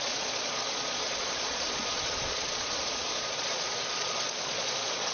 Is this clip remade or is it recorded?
remade